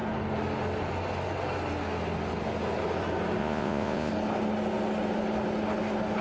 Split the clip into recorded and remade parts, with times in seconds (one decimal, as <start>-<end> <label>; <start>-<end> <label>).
0.0-3.4 recorded; 3.4-4.1 remade; 4.1-6.2 recorded